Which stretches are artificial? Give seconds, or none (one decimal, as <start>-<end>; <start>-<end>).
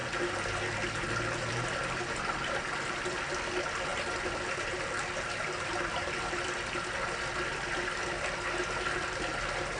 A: none